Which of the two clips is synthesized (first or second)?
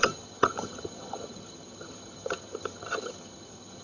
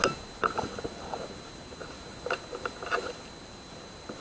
first